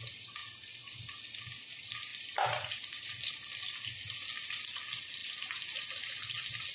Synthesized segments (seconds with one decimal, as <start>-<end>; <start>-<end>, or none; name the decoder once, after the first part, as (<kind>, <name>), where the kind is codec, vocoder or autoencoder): none